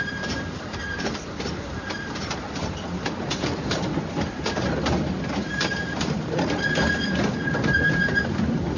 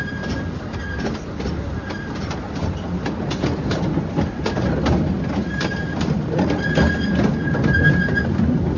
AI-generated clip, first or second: first